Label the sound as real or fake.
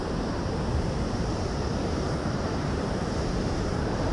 fake